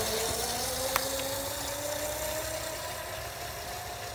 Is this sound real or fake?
real